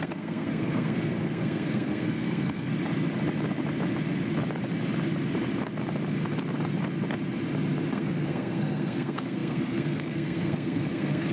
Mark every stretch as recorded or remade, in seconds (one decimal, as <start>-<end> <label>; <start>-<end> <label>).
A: 0.0-2.7 remade; 2.7-7.9 recorded; 7.9-11.3 remade

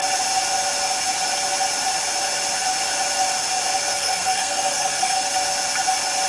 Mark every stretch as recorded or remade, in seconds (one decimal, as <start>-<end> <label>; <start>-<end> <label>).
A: 0.0-3.9 recorded; 3.9-5.3 remade; 5.3-6.3 recorded

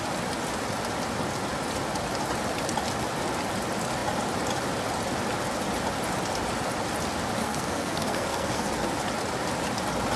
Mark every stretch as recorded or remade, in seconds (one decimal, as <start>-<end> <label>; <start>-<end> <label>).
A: 0.0-7.4 recorded; 7.4-8.9 remade; 8.9-10.2 recorded

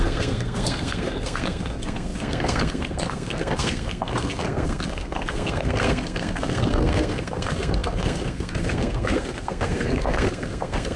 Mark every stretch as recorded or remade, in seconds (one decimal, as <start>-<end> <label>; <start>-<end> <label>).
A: 0.0-11.0 remade

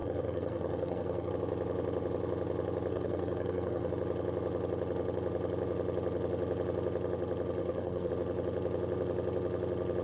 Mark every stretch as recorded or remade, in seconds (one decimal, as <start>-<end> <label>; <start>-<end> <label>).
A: 0.0-1.3 remade; 1.3-2.9 recorded; 2.9-3.9 remade; 3.9-7.6 recorded; 7.6-8.1 remade; 8.1-10.0 recorded

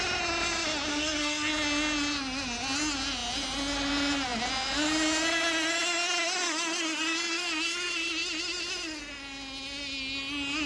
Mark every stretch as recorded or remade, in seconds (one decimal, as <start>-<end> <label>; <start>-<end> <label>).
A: 0.0-0.9 recorded; 0.9-1.5 remade; 1.5-10.7 recorded